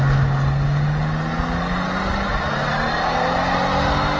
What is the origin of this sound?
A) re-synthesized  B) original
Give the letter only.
B